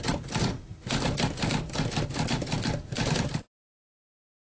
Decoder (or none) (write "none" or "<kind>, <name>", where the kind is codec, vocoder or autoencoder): none